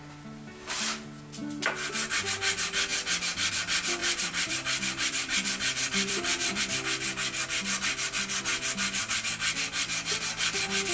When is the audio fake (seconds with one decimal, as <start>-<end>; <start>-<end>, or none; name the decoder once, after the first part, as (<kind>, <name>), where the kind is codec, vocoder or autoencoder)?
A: 4.0-6.6 (vocoder, BigVGAN v2)